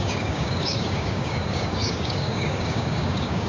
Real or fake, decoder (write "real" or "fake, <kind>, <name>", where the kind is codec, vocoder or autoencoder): fake, codec, DAC